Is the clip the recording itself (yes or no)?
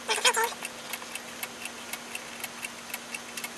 yes